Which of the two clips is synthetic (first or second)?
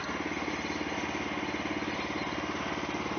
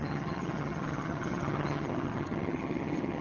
second